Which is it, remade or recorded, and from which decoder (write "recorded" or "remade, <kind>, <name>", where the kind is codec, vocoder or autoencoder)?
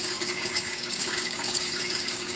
remade, codec, DAC